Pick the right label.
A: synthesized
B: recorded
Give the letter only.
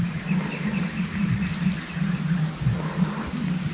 B